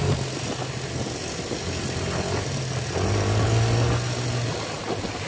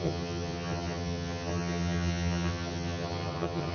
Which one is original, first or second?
first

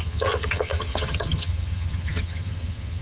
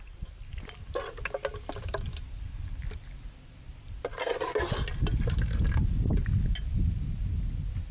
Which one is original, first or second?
second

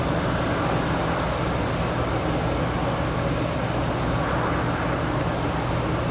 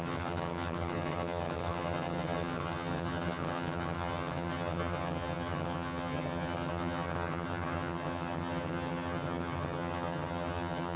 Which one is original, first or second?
first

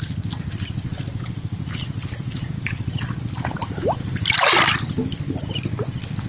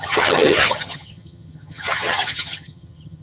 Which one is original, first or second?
first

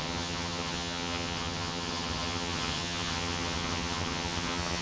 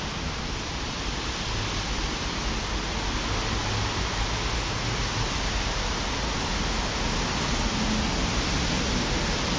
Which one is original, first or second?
second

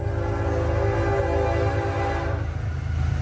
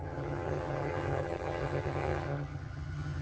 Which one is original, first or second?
first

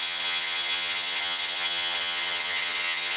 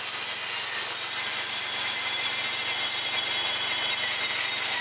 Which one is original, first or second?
second